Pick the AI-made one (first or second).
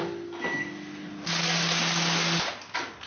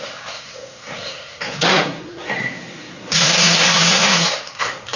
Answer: second